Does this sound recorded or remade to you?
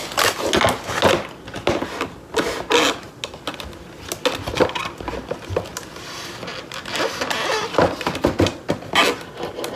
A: recorded